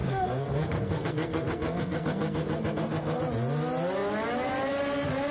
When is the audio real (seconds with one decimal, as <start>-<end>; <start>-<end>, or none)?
3.2-5.3